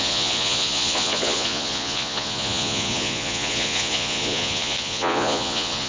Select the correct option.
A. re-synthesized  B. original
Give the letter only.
A